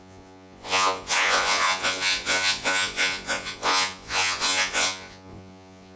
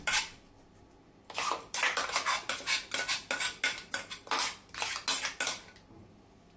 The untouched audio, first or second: second